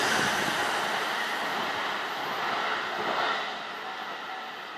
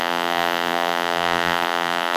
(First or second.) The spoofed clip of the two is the second